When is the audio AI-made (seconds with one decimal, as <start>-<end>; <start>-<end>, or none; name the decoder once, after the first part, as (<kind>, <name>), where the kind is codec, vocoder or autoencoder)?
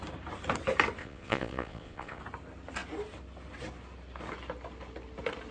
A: 1.0-2.2 (vocoder, Vocos)